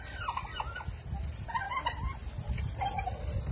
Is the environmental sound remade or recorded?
recorded